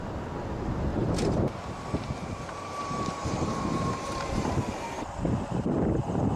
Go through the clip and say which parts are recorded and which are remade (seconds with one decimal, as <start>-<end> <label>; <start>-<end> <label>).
0.0-0.9 recorded; 0.9-2.8 remade; 2.8-3.2 recorded; 3.2-5.1 remade; 5.1-6.4 recorded

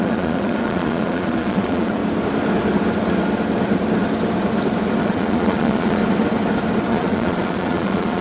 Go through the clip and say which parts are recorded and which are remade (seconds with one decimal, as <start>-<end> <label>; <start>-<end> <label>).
0.0-2.0 remade; 2.0-5.0 recorded; 5.0-6.0 remade; 6.0-6.9 recorded; 6.9-8.2 remade

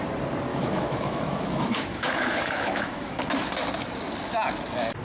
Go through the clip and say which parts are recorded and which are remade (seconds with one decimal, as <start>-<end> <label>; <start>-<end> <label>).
0.0-0.5 recorded; 0.5-3.5 remade; 3.5-5.0 recorded

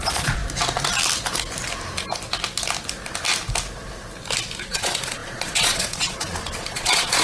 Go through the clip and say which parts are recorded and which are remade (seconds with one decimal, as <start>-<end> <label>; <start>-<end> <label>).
0.0-0.4 remade; 0.4-4.6 recorded; 4.6-7.2 remade

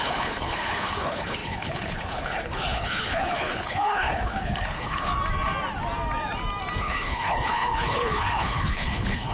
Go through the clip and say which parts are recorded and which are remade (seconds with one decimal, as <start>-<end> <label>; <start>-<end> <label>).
0.0-5.1 remade; 5.1-6.8 recorded; 6.8-9.3 remade